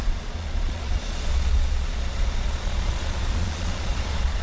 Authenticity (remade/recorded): remade